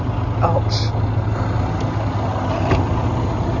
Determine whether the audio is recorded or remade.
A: recorded